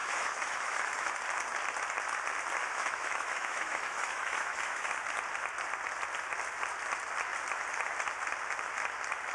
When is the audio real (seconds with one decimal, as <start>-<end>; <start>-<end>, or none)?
1.1-2.6; 4.9-9.3